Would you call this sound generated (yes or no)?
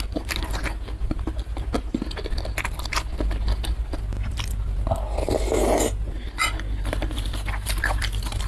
no